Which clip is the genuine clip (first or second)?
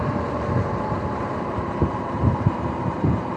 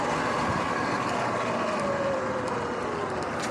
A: second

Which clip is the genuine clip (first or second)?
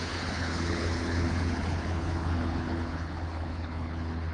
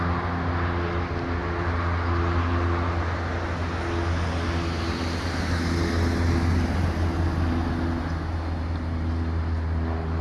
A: second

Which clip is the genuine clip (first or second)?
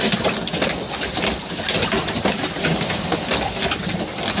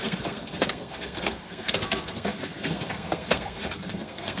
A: first